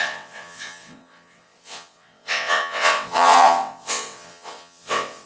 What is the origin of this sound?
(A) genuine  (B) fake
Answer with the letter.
B